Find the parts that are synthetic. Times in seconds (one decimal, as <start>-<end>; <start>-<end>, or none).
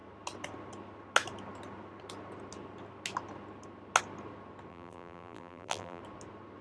4.7-6.0